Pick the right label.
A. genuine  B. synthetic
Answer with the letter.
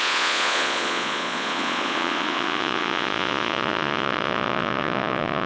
B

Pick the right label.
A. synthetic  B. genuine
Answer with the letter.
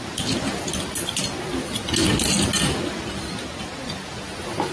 B